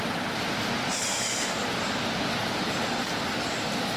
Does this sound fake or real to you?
real